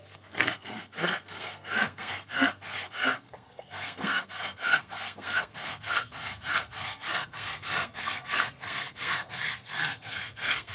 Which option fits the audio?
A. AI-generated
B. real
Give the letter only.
A